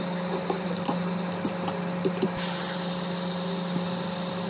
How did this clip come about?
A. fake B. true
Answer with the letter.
B